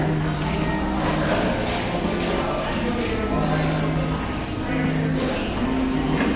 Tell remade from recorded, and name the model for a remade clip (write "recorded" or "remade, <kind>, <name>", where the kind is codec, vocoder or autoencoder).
recorded